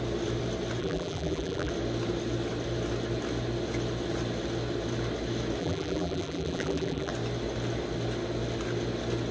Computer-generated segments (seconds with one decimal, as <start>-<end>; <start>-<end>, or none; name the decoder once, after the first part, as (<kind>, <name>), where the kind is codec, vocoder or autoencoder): 0.8-1.7 (vocoder, BigVGAN v2); 5.6-7.1